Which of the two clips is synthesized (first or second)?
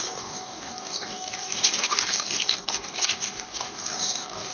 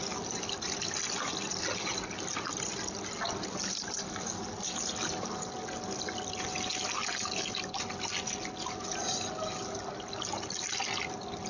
first